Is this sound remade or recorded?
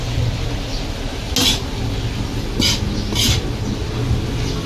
recorded